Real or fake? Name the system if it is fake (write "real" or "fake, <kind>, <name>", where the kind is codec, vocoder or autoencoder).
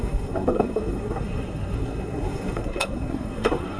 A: fake, codec, SNAC